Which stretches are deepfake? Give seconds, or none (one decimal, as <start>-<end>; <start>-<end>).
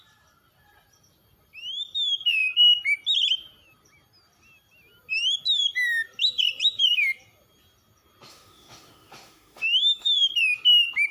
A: 8.3-10.3